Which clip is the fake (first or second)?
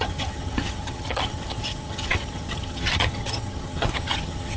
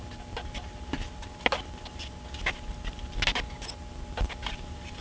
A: first